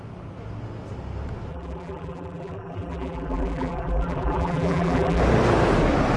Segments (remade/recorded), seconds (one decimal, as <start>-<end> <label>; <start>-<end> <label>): 0.0-1.5 recorded; 1.5-5.2 remade; 5.2-6.2 recorded